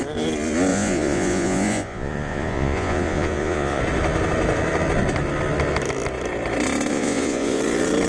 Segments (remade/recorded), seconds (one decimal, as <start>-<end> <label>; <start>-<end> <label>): 0.0-0.7 recorded; 0.7-3.8 remade; 3.8-6.9 recorded; 6.9-7.6 remade; 7.6-8.1 recorded